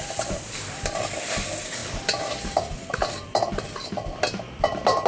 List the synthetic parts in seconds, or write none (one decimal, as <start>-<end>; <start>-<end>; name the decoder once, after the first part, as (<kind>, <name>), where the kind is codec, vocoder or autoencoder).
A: 0.0-1.8 (vocoder, BigVGAN v2); 2.4-5.1